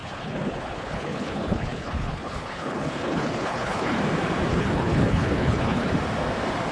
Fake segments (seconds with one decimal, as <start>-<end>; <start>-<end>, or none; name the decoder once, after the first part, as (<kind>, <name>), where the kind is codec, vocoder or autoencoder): 0.0-4.0 (codec, HILCodec); 4.5-5.9